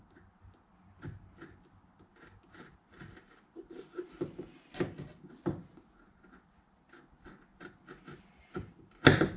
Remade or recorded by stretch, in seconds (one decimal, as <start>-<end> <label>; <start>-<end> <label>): 0.0-9.4 recorded